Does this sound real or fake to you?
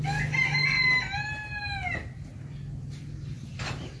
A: real